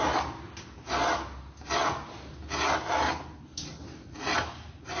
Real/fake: real